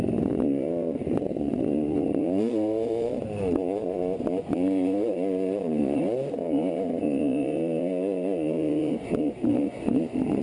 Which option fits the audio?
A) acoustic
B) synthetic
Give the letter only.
B